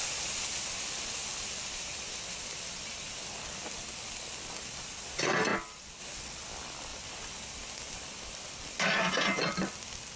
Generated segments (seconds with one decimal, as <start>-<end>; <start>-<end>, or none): 1.3-3.2; 6.9-9.1